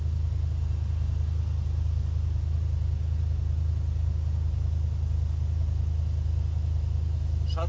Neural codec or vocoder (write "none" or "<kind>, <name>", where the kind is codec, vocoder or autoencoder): none